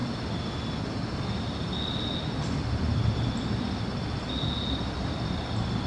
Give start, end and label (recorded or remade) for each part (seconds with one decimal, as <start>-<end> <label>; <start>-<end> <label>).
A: 0.0-5.9 recorded